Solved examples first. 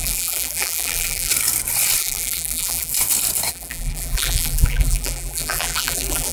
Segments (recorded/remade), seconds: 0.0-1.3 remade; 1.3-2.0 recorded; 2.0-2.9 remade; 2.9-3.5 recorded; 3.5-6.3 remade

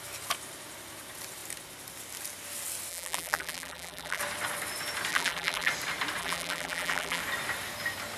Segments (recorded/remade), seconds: 0.0-2.9 recorded; 2.9-4.2 remade; 4.2-5.1 recorded; 5.1-5.7 remade; 5.7-6.2 recorded; 6.2-7.2 remade; 7.2-8.2 recorded